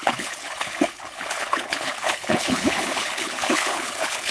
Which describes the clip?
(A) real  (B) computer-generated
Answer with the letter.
B